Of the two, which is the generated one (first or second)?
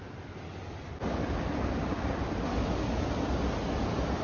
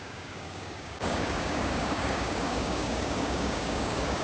second